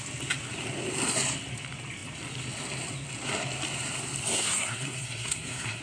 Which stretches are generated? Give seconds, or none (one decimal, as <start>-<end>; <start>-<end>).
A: 4.3-5.8